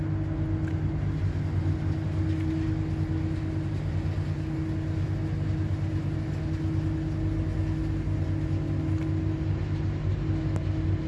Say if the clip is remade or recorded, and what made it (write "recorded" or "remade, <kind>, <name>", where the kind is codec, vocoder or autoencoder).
recorded